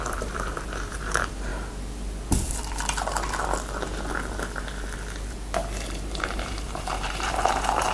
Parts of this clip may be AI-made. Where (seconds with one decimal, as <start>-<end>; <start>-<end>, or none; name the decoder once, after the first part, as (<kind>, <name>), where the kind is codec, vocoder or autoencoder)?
0.0-1.5 (vocoder, BigVGAN v2); 6.2-7.9